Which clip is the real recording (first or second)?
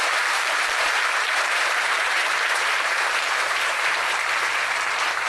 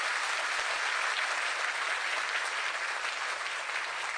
second